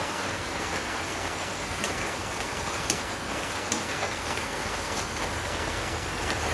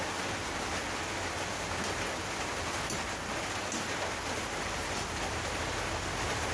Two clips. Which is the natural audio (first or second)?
second